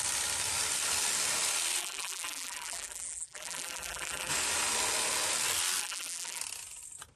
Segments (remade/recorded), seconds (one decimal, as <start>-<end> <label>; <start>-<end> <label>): 0.0-1.8 recorded; 1.8-4.3 remade; 4.3-5.8 recorded; 5.8-6.4 remade; 6.4-7.2 recorded